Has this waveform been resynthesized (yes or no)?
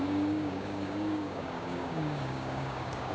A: yes